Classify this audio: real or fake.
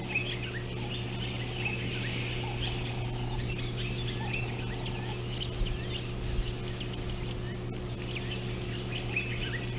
real